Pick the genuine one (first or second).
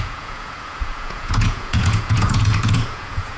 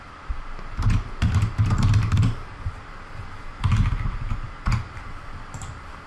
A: second